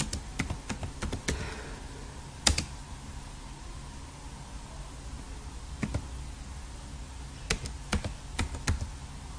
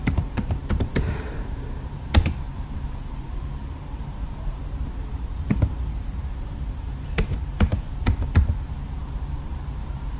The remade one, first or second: second